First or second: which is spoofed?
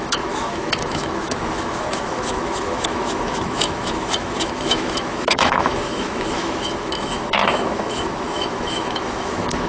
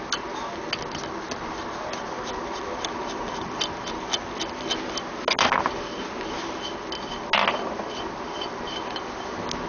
first